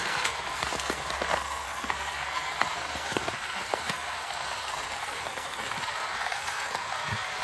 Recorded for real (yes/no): no